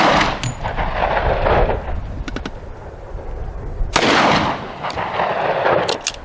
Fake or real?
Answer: real